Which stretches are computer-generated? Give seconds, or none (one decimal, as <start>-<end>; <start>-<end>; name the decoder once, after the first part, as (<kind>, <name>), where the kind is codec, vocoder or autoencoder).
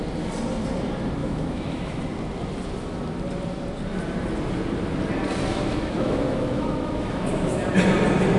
1.2-2.0 (autoencoder, DAC-VAE); 5.5-7.6